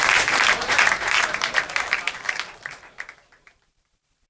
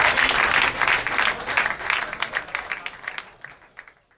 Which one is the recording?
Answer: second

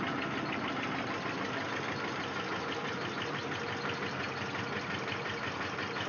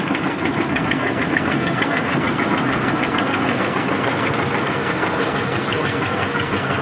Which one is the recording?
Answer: first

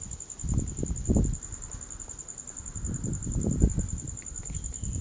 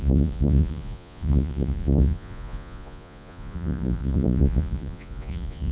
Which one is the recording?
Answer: first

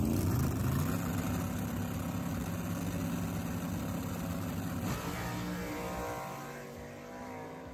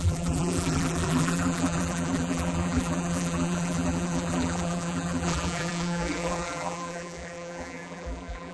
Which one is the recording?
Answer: first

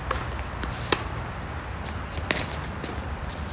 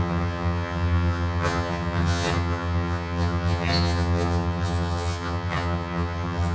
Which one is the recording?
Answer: first